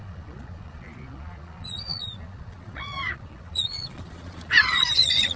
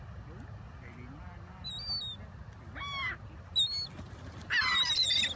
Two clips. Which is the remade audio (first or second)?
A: first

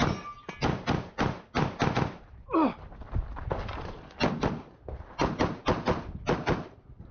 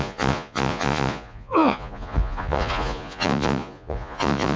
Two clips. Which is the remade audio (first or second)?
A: second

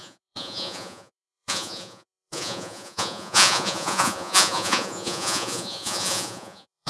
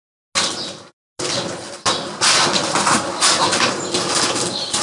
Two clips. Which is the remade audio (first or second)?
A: first